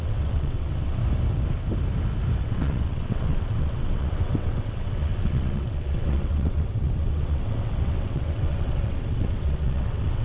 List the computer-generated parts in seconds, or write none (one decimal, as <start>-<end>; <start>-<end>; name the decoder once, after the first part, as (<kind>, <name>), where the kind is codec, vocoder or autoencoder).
0.0-1.0 (vocoder, WaveNeXt); 2.4-10.2